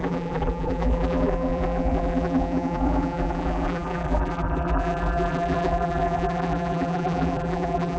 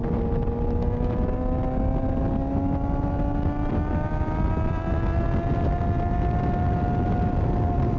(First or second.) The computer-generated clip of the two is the first